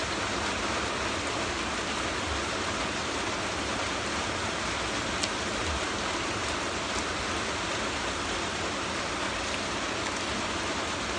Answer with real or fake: real